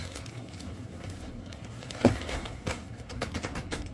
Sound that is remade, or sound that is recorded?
remade